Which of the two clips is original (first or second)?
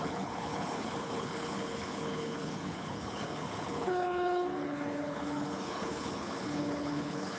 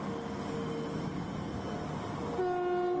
second